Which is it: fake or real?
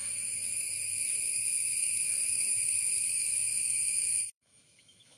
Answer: fake